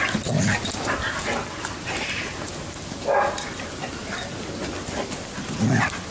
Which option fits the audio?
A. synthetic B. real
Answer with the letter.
B